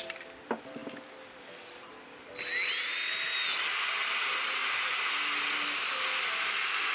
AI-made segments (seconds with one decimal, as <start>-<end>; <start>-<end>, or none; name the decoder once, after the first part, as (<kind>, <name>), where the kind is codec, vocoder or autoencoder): none